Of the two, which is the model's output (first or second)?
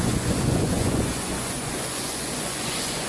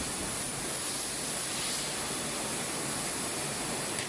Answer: first